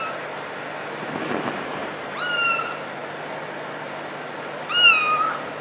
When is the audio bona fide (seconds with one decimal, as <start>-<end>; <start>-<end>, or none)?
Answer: 0.0-5.6